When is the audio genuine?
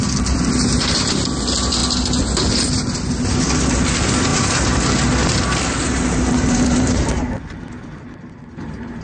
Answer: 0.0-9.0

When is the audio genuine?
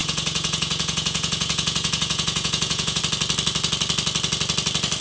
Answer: 3.0-5.0